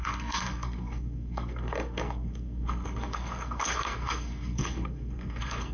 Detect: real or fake fake